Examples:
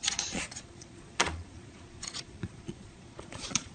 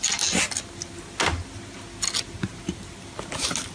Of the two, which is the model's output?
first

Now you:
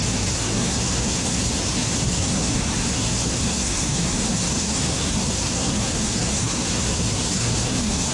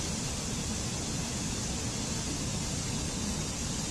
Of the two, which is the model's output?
first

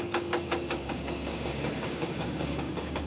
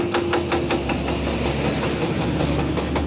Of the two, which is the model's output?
first